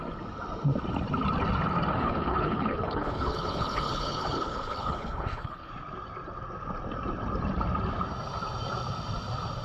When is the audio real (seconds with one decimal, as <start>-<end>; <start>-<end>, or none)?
0.0-1.9; 5.7-9.6